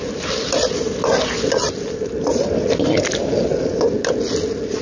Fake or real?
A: real